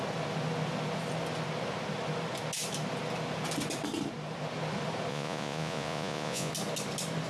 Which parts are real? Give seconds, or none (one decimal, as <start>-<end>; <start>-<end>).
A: 0.0-5.1; 6.5-7.3